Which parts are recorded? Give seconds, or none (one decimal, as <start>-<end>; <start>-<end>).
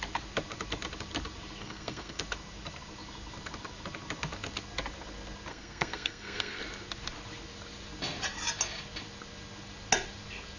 0.0-1.6; 2.2-5.5; 6.6-10.6